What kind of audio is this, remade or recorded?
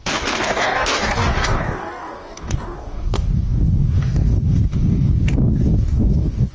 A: remade